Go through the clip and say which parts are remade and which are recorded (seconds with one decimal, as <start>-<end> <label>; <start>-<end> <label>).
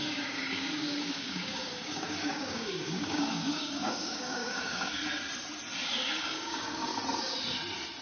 0.0-5.0 remade; 5.0-6.2 recorded; 6.2-6.9 remade; 6.9-8.0 recorded